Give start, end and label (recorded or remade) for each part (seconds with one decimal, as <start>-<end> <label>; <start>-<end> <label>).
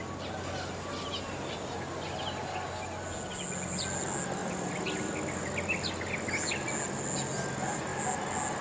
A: 0.0-8.6 recorded